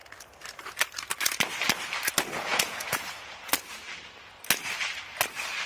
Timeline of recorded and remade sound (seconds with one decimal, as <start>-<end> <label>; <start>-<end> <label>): 0.0-2.5 recorded; 2.5-3.5 remade; 3.5-5.7 recorded